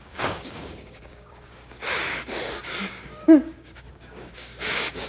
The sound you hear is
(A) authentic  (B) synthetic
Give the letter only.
B